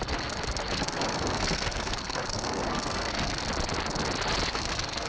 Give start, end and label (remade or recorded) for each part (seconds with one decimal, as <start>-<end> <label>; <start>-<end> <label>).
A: 0.0-3.4 remade; 3.4-4.5 recorded; 4.5-5.1 remade